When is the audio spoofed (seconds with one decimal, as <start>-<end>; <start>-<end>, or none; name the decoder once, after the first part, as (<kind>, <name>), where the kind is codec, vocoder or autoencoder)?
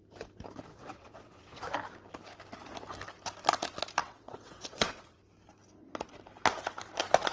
0.7-1.6 (vocoder, WaveNeXt); 4.0-5.2